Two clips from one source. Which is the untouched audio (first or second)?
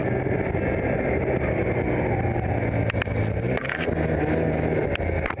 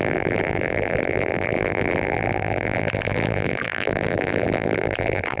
first